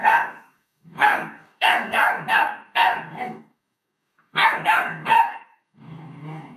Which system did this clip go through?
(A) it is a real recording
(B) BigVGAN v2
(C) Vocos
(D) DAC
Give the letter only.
D